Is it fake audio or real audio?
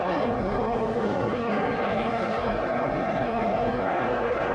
fake